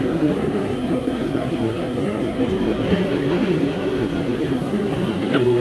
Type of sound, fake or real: fake